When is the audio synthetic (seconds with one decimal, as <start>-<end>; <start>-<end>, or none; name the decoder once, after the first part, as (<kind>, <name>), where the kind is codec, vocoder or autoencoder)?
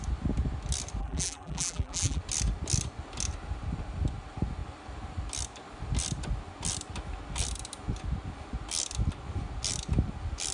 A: 1.0-2.2 (vocoder, BigVGAN v2)